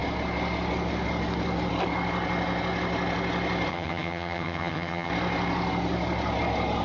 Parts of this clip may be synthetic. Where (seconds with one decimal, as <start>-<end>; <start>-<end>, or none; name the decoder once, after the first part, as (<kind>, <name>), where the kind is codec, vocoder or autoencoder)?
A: 3.7-5.1 (vocoder, HiFi-GAN)